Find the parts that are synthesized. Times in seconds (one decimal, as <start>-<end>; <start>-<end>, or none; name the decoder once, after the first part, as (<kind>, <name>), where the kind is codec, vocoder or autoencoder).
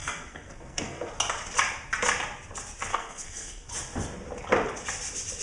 0.0-1.1 (codec, SNAC); 2.9-3.7